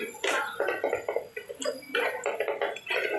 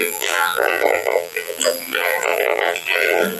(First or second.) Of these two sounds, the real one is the first